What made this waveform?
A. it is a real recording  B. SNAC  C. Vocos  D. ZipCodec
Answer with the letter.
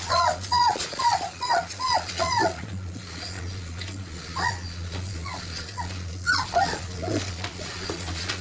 C